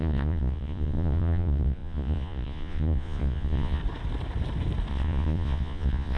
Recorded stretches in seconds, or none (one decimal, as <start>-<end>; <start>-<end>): 3.8-4.9